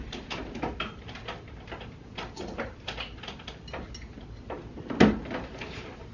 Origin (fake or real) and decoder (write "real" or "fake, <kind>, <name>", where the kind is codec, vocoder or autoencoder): real